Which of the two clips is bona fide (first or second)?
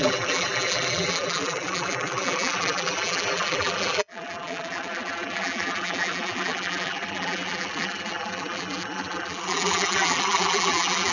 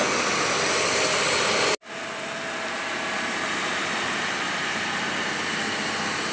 second